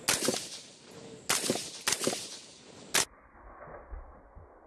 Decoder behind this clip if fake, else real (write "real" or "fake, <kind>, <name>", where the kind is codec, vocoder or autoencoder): real